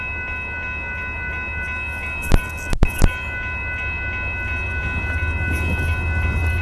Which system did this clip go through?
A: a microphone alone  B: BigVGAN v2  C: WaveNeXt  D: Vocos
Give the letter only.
A